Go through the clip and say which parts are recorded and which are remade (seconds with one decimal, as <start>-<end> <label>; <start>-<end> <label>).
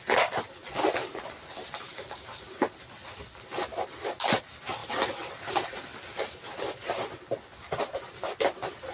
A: 0.0-0.6 remade; 0.6-1.5 recorded; 1.5-4.8 remade; 4.8-5.5 recorded; 5.5-5.9 remade; 5.9-6.6 recorded; 6.6-8.9 remade